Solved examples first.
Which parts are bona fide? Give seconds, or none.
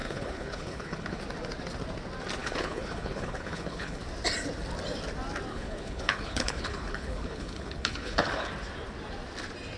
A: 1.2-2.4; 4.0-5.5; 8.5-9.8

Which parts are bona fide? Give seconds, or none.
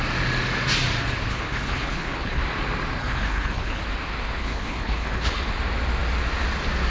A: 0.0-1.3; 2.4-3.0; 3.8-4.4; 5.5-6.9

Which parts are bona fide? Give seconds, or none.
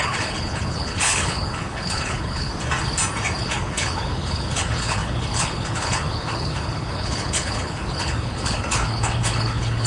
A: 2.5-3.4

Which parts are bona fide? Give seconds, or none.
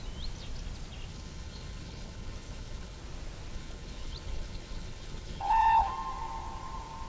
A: 0.0-1.1; 3.0-3.5; 5.9-7.1